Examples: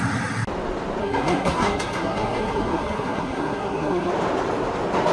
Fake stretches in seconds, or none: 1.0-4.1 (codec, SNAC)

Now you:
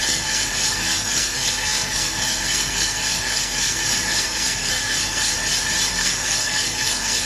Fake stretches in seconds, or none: 0.0-5.3 (codec, SNAC); 5.9-7.3

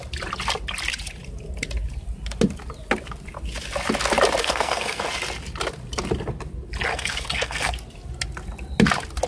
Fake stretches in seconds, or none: 4.4-5.0 (codec, SNAC); 6.9-7.7

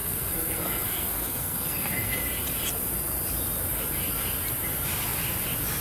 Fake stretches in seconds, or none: 0.0-2.2 (codec, SNAC)

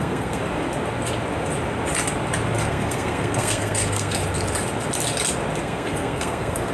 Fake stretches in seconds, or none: 0.0-0.4 (codec, SNAC); 2.6-4.2; 5.6-6.7

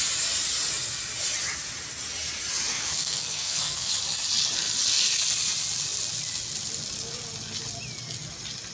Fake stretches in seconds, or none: 2.7-3.9 (codec, SNAC)

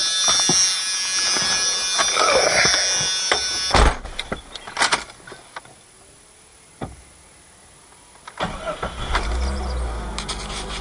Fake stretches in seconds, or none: none

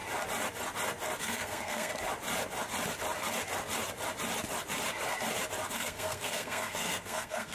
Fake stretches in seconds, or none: 1.2-1.9 (codec, SNAC); 5.7-7.5